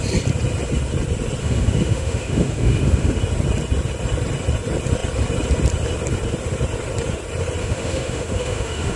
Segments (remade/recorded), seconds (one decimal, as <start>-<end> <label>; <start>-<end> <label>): 0.0-1.4 recorded; 1.4-3.2 remade; 3.2-7.6 recorded; 7.6-9.0 remade